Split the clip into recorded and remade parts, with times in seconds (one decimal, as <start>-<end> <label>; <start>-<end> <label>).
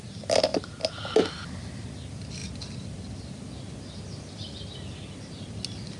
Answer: 0.0-6.0 recorded